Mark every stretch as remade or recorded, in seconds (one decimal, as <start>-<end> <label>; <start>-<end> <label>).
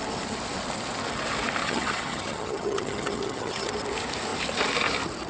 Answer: 0.0-1.6 recorded; 1.6-3.7 remade; 3.7-5.3 recorded